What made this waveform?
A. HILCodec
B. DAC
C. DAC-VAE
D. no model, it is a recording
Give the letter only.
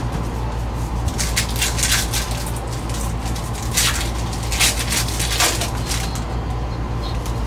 D